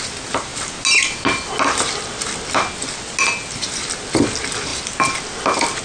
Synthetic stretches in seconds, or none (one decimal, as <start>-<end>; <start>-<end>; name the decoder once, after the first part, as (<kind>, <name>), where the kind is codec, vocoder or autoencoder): none

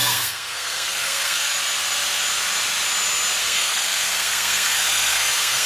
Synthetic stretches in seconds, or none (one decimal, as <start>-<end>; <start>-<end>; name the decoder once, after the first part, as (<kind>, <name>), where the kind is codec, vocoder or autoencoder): 0.0-1.5 (codec, SNAC); 3.4-5.7

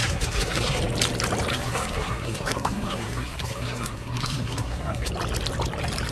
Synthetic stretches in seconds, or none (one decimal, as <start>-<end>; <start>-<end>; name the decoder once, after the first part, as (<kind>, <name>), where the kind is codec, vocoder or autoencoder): 0.0-0.8 (codec, SNAC); 1.5-5.1